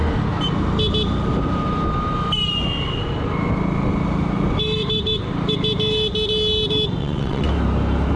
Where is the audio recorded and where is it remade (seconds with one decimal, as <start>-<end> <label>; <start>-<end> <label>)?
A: 0.0-7.0 recorded; 7.0-7.5 remade; 7.5-8.2 recorded